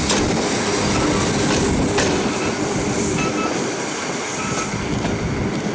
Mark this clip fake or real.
real